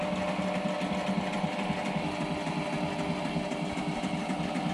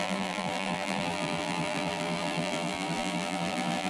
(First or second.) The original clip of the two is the first